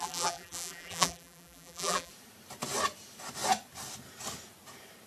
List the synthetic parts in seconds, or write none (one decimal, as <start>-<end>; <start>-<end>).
0.0-2.1